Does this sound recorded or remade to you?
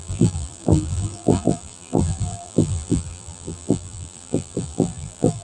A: remade